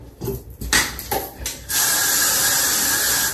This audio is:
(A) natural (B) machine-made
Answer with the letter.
A